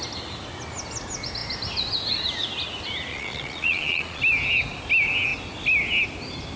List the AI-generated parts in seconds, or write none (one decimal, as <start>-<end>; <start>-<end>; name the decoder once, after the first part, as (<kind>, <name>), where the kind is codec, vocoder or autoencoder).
3.1-4.2 (vocoder, Vocos)

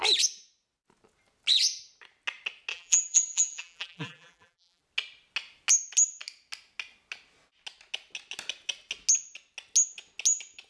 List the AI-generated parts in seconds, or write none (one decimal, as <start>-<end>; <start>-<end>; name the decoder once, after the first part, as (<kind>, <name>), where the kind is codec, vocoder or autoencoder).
2.7-4.8 (vocoder, BigVGAN v2)